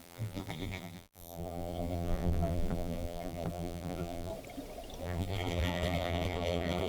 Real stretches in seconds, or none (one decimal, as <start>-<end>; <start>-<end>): 4.3-5.0